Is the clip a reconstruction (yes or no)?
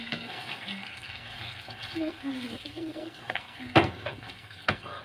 yes